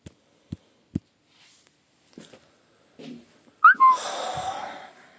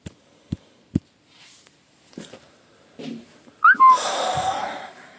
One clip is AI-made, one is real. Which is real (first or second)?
first